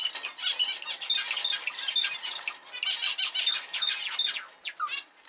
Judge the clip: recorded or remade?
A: recorded